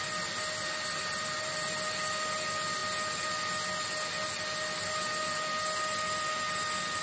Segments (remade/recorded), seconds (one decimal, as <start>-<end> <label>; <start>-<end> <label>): 0.0-7.0 recorded